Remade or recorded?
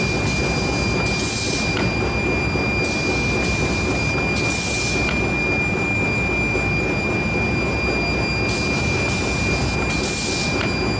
recorded